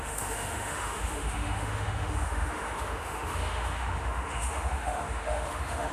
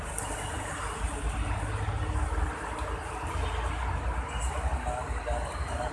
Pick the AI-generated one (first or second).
first